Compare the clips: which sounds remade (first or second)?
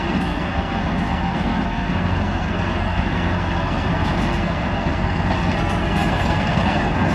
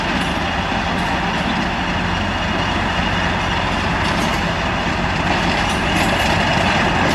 first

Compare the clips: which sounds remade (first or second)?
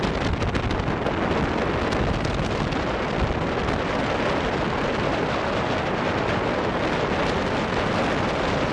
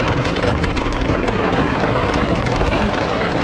second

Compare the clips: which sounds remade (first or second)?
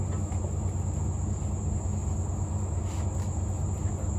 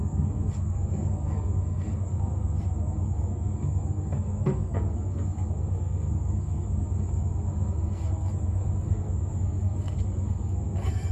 second